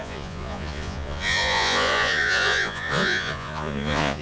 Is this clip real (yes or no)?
no